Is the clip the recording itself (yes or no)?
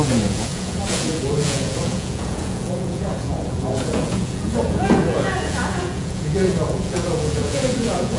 no